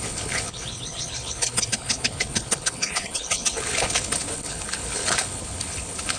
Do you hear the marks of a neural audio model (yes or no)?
yes